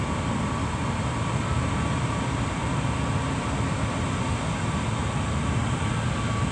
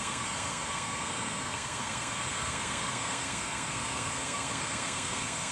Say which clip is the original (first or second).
first